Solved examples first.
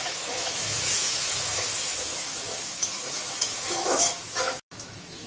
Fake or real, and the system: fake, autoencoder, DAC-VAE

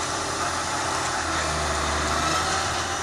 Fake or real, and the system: real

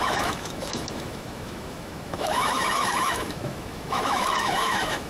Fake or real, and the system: fake, autoencoder, DAC-VAE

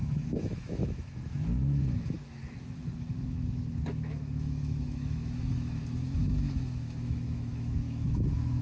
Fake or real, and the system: fake, autoencoder, DAC-VAE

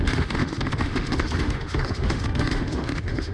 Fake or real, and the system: fake, autoencoder, DAC-VAE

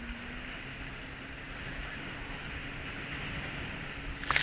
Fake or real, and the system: real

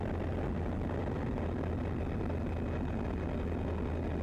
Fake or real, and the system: real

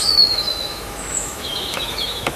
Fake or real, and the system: fake, autoencoder, DAC-VAE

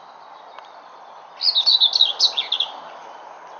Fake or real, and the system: real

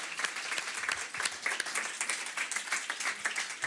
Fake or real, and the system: real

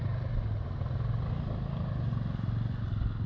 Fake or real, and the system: real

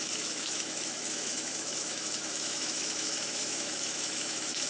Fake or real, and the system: fake, autoencoder, DAC-VAE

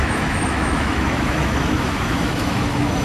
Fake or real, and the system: fake, autoencoder, DAC-VAE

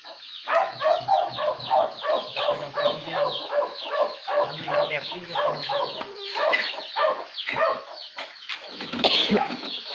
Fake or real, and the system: fake, autoencoder, DAC-VAE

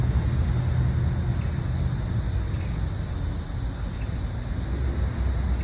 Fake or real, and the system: real